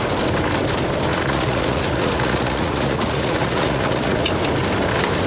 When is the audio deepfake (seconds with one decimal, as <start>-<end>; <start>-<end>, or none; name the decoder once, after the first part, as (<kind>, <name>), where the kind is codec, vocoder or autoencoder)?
1.1-4.3 (vocoder, Vocos)